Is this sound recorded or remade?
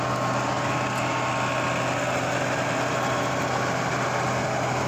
recorded